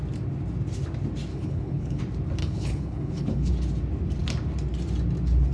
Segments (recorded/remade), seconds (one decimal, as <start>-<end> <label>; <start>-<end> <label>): 0.0-1.3 recorded; 1.3-2.0 remade; 2.0-2.4 recorded; 2.4-3.5 remade; 3.5-5.5 recorded